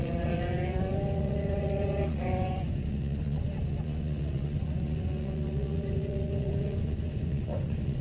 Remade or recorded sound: remade